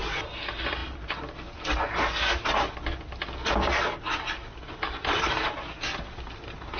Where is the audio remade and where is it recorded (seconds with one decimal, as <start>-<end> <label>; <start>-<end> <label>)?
0.0-6.8 recorded